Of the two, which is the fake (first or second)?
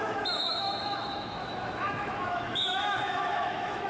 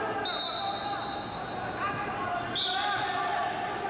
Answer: first